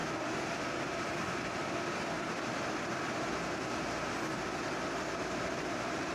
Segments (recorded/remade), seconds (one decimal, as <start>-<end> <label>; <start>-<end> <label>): 0.0-0.8 recorded; 0.8-1.6 remade; 1.6-5.3 recorded; 5.3-6.1 remade